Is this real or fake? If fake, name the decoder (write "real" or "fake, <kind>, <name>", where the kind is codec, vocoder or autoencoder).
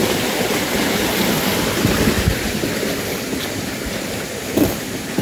real